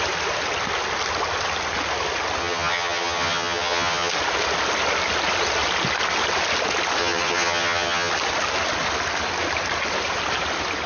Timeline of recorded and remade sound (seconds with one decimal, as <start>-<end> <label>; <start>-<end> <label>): 0.0-2.4 recorded; 2.4-4.1 remade; 4.1-7.0 recorded; 7.0-8.1 remade; 8.1-10.9 recorded